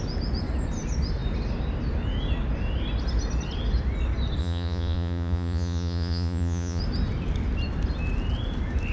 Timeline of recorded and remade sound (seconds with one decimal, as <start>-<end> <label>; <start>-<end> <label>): 0.0-4.4 recorded; 4.4-6.8 remade; 6.8-8.9 recorded